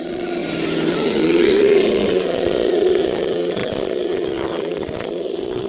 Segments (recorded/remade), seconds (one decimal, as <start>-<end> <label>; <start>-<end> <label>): 0.0-0.4 remade; 0.4-0.9 recorded; 0.9-5.7 remade